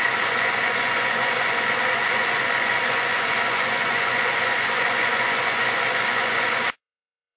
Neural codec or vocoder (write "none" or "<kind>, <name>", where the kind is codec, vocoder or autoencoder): vocoder, Vocos